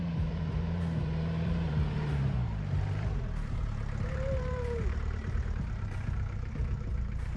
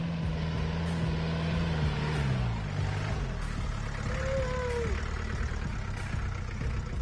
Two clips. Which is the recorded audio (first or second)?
second